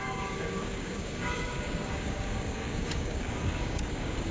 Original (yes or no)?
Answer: no